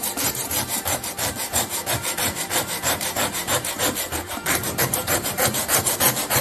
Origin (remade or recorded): remade